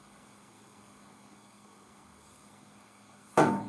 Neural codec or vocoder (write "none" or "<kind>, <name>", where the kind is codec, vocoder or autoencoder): codec, SNAC